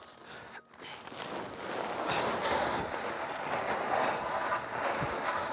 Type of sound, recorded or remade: recorded